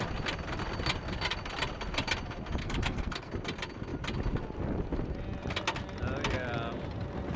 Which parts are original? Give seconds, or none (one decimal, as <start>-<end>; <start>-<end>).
0.0-2.6; 3.3-7.4